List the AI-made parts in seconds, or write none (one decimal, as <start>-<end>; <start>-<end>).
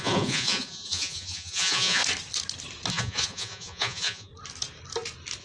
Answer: 0.0-2.0; 2.9-4.3